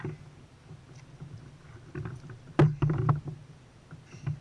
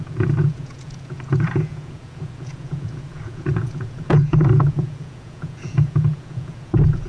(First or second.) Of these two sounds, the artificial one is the second